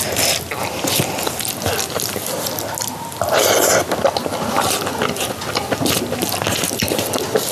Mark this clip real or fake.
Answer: real